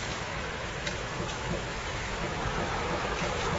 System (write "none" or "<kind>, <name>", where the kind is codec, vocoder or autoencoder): autoencoder, DAC-VAE